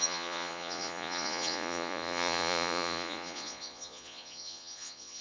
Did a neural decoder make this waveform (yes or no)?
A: yes